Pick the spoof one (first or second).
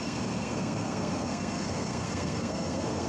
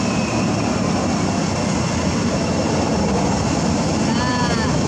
first